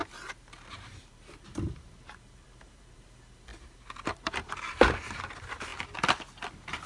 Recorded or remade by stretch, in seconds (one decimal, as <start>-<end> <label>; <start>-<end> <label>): 0.0-3.1 remade; 3.1-3.5 recorded; 3.5-5.2 remade; 5.2-6.9 recorded